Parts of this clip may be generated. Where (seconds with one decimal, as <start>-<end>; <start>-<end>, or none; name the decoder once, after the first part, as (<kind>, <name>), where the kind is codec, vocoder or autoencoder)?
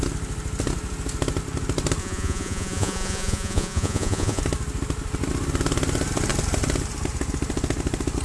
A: 2.0-4.4 (vocoder, Vocos)